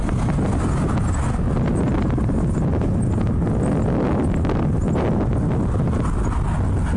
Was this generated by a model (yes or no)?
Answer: no